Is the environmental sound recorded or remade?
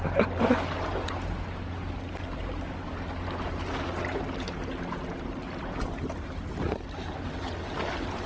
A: recorded